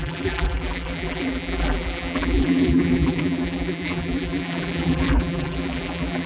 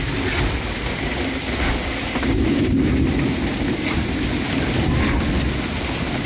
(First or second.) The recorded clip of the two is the second